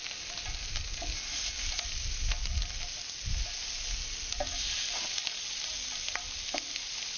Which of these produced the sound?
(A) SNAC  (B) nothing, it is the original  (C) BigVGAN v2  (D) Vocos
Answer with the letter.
B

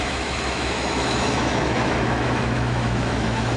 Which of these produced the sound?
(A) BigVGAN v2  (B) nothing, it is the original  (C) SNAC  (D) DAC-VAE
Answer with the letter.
D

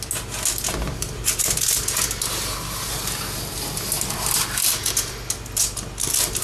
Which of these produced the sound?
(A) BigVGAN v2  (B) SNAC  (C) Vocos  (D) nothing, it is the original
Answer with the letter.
D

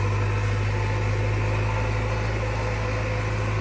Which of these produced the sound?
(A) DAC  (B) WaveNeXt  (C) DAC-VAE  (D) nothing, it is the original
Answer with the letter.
D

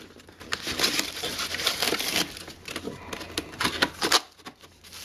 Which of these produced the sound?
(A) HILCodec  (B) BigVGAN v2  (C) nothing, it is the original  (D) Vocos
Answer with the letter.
C